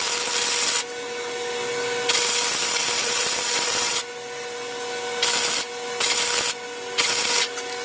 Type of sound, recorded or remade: recorded